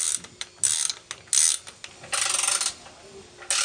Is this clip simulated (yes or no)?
no